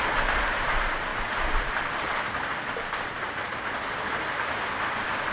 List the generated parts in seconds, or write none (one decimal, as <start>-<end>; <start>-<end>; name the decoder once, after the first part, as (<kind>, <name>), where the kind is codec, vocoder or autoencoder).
none